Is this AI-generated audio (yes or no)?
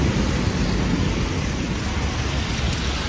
no